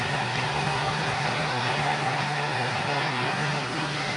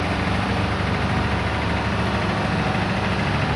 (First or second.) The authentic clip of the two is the second